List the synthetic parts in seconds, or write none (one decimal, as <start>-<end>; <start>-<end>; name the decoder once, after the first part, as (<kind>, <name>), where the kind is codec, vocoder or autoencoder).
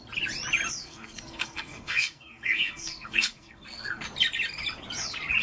0.8-4.0 (codec, SNAC)